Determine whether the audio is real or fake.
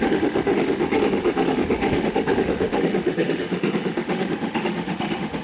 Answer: fake